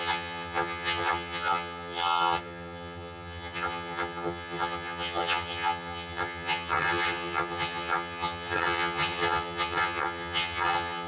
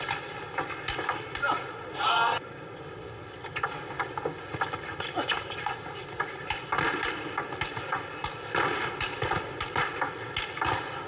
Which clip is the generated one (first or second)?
first